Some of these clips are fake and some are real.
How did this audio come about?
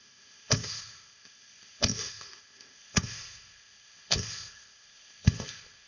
fake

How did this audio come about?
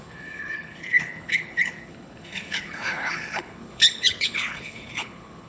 fake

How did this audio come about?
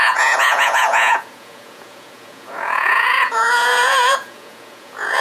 fake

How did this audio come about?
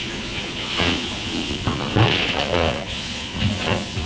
fake